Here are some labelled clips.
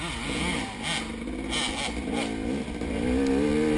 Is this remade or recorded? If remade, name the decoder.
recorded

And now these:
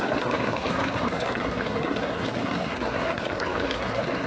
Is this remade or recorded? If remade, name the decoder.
remade, codec, SNAC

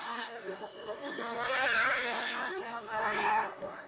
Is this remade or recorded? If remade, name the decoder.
remade, codec, SNAC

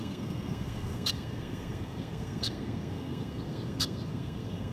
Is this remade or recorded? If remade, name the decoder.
remade, codec, SNAC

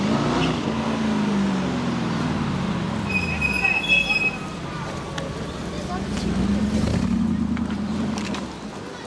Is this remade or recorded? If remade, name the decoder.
recorded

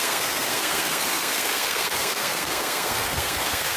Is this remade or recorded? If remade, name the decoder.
remade, codec, SNAC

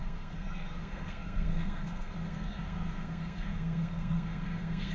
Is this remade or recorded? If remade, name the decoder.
remade, codec, SNAC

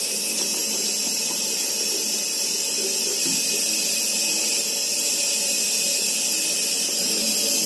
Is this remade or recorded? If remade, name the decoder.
recorded